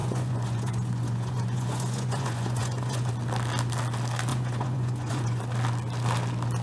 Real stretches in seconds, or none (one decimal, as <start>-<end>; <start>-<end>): 3.1-4.3; 5.4-6.6